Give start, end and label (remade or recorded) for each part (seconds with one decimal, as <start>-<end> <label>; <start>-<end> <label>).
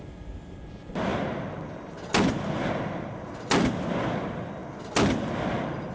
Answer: 0.0-5.9 recorded